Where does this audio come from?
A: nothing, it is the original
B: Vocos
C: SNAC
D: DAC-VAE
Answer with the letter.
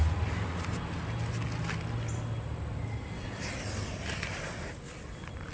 A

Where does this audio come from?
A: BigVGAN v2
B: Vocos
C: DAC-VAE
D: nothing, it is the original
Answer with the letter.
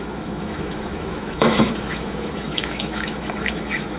C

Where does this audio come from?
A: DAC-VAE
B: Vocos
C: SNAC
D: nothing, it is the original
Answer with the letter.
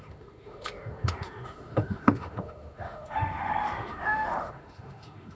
A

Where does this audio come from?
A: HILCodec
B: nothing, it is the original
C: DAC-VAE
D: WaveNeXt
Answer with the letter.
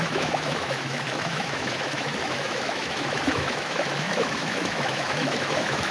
C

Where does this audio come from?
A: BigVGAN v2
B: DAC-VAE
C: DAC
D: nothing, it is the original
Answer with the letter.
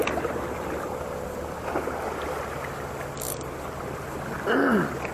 D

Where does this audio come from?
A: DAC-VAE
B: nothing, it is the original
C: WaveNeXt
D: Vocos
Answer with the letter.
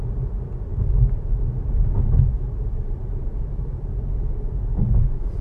B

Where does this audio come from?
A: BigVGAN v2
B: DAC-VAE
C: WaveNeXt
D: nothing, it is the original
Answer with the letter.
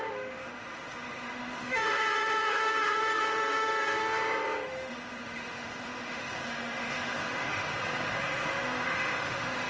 B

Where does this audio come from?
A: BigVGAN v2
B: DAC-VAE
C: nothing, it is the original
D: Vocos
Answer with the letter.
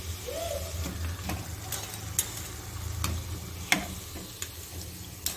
C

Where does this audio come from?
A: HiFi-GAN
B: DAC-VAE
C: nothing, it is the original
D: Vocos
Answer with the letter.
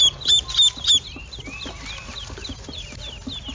C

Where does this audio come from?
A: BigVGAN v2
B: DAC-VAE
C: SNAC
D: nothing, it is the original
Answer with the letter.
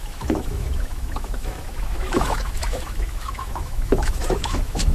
B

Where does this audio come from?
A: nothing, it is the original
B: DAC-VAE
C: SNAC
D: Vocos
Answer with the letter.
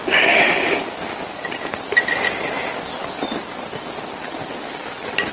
A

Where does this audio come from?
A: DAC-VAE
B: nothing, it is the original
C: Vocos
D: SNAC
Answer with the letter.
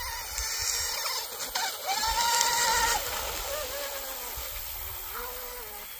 B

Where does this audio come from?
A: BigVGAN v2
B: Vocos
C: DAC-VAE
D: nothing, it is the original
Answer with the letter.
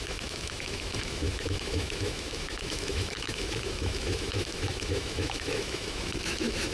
C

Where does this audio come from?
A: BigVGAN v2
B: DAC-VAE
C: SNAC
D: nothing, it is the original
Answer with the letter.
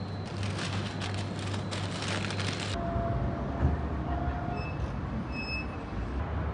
D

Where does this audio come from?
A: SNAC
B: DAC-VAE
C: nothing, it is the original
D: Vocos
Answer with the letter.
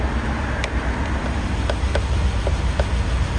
C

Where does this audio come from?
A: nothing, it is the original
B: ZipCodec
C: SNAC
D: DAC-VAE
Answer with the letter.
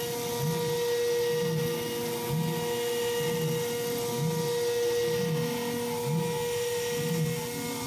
A